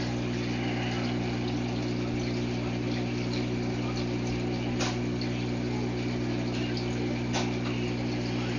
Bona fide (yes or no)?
yes